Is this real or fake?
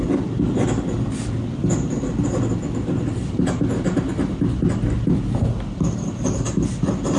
real